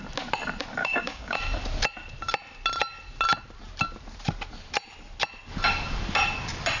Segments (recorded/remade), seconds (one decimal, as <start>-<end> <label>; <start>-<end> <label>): 0.0-0.8 recorded; 0.8-1.4 remade; 1.4-6.8 recorded

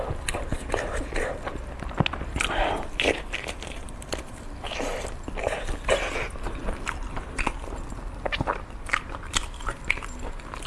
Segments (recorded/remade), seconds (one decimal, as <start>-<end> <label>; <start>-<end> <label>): 0.0-10.7 recorded

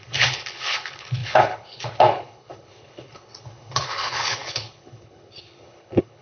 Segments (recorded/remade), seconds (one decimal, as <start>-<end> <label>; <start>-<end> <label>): 0.0-6.2 remade

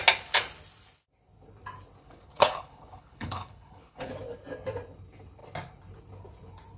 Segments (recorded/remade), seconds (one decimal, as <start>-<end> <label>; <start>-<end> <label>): 0.0-2.0 recorded; 2.0-4.1 remade; 4.1-6.8 recorded

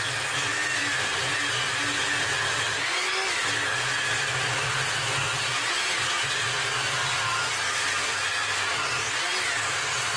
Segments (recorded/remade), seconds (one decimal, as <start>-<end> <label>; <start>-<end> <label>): 0.0-10.2 recorded

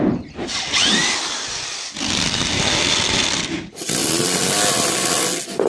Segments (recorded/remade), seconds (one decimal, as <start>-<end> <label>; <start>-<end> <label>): 0.0-5.7 recorded

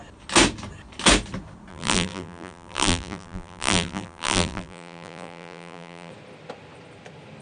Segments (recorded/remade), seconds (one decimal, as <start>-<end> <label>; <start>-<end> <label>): 0.0-1.7 recorded; 1.7-6.1 remade; 6.1-7.4 recorded

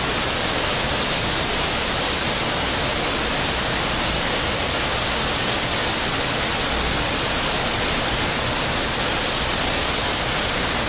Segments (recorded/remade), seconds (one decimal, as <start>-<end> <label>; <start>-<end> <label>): 0.0-10.9 recorded